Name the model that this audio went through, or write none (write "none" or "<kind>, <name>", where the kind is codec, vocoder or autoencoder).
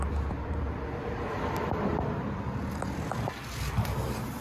vocoder, BigVGAN v2